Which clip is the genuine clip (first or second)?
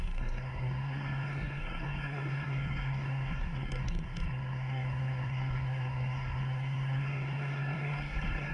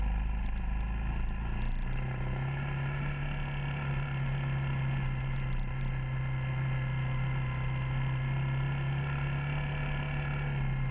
second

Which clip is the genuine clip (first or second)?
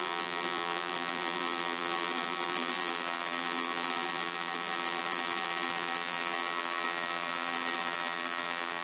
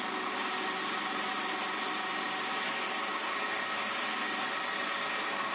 second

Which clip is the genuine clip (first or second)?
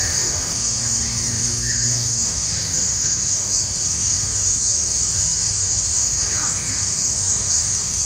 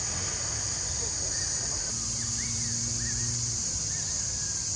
second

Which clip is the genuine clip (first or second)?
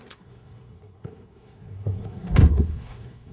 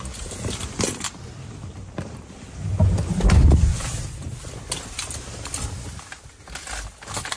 second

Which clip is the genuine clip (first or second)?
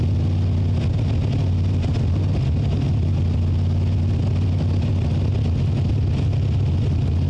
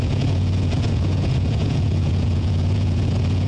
first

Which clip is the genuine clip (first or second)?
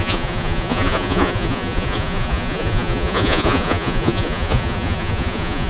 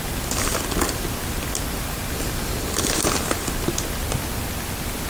second